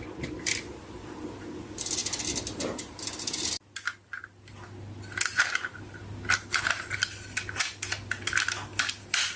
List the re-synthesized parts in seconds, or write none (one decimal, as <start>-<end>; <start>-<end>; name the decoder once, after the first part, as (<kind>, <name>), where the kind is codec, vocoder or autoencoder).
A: none